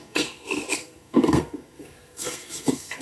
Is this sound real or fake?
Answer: fake